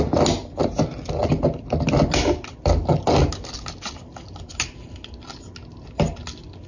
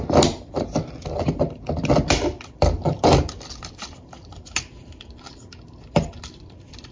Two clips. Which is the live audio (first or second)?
first